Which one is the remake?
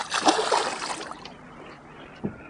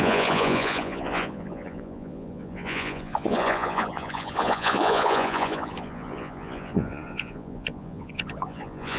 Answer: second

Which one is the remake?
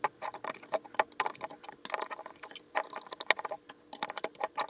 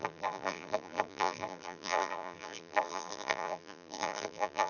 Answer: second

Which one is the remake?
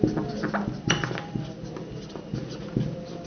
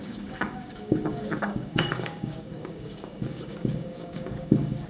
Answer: second